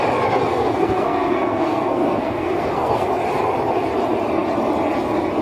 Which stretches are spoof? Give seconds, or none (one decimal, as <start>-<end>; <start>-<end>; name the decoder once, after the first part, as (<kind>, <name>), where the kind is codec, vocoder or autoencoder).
0.5-3.1 (codec, SNAC)